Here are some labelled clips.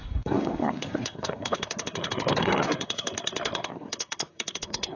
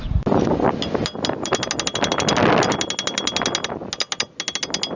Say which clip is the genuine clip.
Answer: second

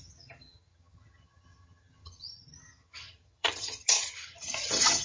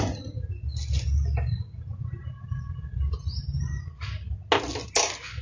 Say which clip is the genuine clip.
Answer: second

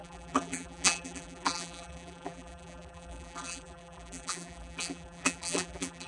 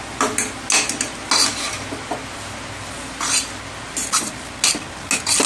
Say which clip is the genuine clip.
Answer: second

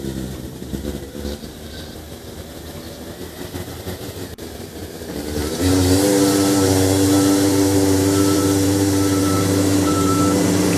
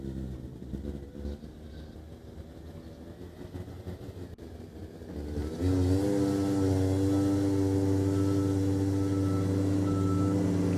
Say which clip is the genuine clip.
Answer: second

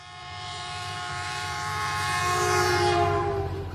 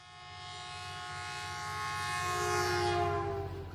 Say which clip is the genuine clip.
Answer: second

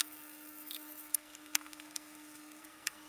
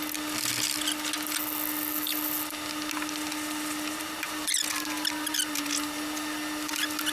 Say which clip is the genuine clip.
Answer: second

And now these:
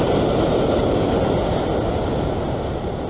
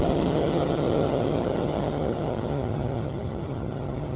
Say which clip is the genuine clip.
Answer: first